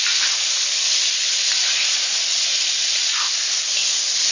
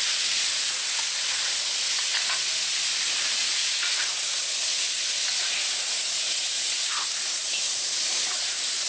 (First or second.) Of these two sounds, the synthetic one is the second